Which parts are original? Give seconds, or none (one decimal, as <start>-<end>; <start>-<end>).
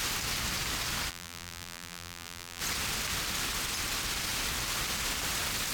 0.0-1.1; 2.6-5.7